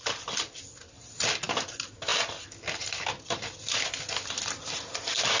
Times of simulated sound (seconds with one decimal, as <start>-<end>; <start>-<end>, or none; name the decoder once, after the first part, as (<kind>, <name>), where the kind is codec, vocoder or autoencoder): none